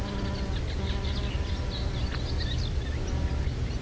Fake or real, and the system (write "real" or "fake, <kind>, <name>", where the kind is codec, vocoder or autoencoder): real